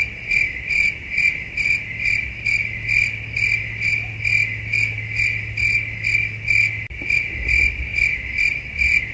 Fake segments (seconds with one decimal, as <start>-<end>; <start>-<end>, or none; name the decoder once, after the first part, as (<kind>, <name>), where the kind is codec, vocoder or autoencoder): none